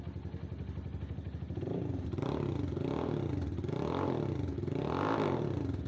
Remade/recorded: recorded